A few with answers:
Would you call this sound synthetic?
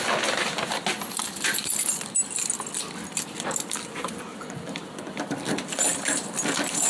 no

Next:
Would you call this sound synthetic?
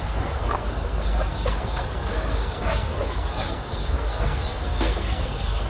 yes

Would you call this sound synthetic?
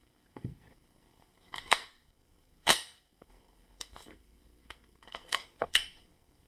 yes